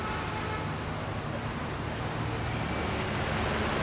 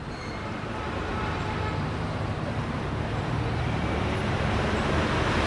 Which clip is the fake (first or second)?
second